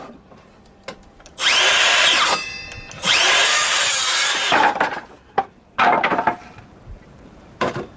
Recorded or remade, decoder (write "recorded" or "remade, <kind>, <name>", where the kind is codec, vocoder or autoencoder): remade, vocoder, BigVGAN v2